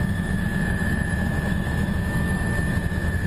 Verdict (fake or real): fake